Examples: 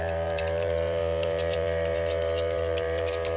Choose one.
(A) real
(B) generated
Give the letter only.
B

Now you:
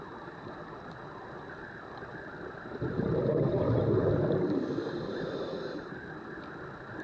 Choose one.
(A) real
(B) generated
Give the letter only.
A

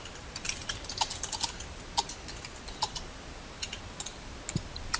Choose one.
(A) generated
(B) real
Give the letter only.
B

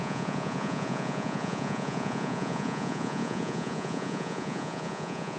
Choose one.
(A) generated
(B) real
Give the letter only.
A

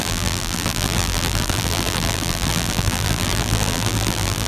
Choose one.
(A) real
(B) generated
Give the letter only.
B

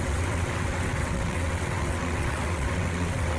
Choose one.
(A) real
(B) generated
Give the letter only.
B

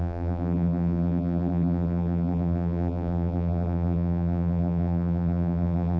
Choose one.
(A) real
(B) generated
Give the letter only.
B